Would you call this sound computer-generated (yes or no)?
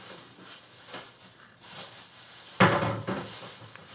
no